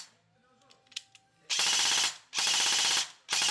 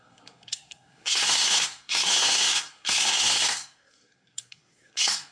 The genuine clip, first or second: first